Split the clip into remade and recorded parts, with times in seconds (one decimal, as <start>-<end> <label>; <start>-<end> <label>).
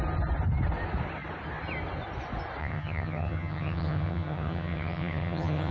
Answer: 0.0-2.6 recorded; 2.6-5.7 remade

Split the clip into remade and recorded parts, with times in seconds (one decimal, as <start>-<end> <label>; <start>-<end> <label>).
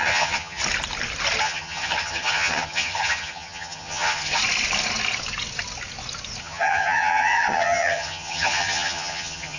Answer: 0.0-0.6 remade; 0.6-1.4 recorded; 1.4-4.4 remade; 4.4-6.4 recorded; 6.4-9.6 remade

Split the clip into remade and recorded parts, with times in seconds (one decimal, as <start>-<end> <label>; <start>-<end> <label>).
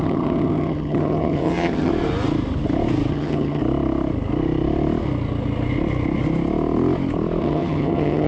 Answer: 0.0-1.9 remade; 1.9-3.1 recorded; 3.1-3.6 remade; 3.6-7.4 recorded; 7.4-8.3 remade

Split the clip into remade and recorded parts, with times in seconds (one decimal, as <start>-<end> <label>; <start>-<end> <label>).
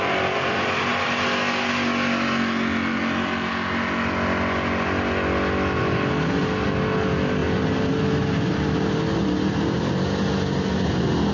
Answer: 0.0-11.3 recorded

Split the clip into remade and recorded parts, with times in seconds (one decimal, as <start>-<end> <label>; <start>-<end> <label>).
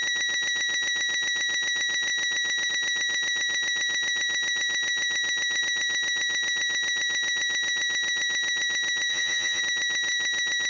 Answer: 0.0-9.1 recorded; 9.1-9.6 remade; 9.6-10.7 recorded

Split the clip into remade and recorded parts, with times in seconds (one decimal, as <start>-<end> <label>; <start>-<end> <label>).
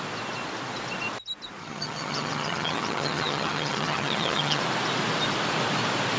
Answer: 0.0-1.6 recorded; 1.6-4.6 remade; 4.6-6.2 recorded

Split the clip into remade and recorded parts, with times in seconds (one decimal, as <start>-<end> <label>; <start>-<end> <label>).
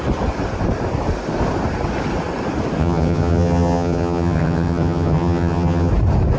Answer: 0.0-2.8 recorded; 2.8-5.9 remade; 5.9-6.4 recorded